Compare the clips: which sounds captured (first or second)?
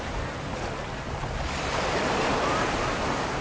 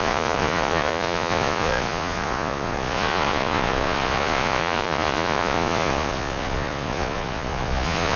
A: first